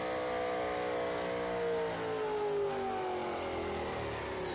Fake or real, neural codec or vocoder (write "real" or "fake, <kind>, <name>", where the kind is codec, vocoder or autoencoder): real